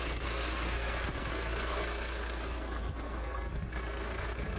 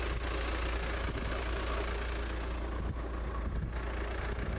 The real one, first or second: second